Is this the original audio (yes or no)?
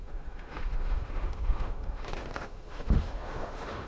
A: no